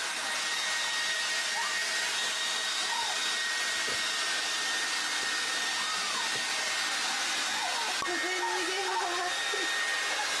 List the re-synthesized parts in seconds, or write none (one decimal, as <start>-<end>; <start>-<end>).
none